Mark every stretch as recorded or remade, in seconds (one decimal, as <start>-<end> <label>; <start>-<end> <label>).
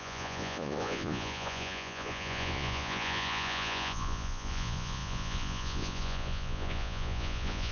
0.0-7.7 remade